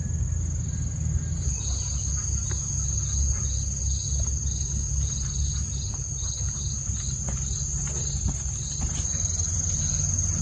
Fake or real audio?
real